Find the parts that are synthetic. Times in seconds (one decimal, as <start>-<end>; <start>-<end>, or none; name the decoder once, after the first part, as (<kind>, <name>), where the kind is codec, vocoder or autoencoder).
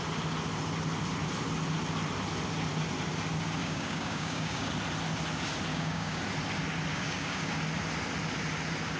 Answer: 3.6-4.7 (codec, DAC); 5.7-6.2; 6.9-7.5